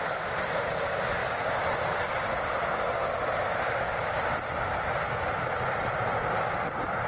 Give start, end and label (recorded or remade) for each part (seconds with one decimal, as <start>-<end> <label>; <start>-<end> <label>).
0.0-7.1 recorded